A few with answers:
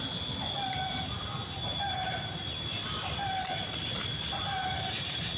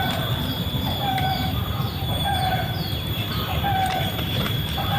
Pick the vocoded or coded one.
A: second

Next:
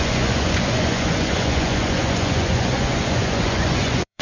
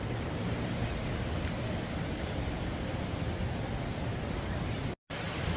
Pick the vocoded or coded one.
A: first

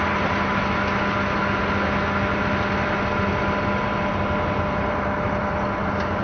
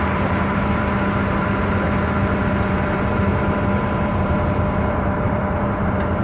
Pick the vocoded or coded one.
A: second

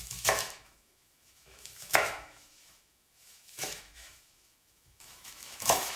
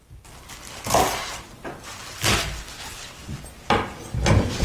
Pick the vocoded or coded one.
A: first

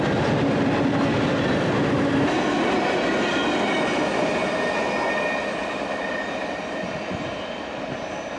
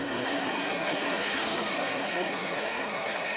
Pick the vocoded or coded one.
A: second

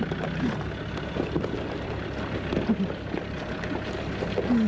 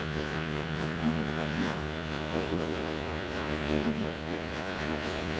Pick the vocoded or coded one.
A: second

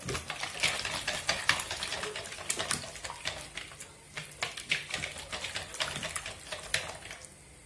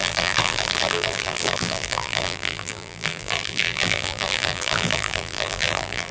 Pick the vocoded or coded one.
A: second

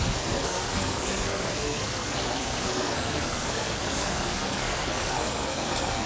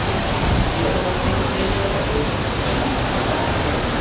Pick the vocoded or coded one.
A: first